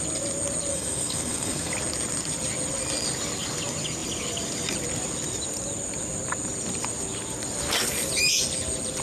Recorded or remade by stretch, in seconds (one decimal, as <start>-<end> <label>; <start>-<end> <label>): 0.0-0.7 recorded; 0.7-1.7 remade; 1.7-9.0 recorded